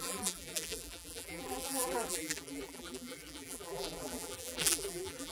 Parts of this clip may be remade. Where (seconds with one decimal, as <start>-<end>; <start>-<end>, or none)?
0.0-5.3